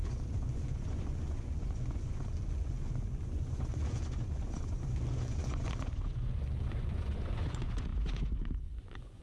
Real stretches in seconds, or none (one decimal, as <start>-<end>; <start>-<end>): none

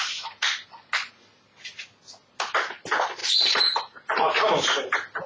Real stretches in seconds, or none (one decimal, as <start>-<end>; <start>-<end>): 0.0-5.3

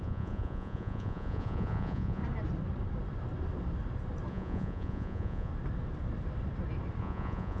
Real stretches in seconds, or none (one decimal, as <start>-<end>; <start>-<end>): 2.2-4.3; 5.5-7.0

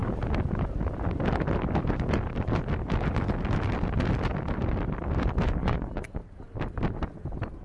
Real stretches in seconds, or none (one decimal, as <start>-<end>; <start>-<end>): 0.0-5.6; 6.2-7.6

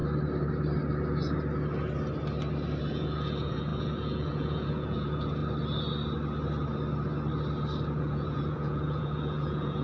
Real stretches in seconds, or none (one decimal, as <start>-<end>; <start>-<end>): 0.0-2.9; 5.4-7.9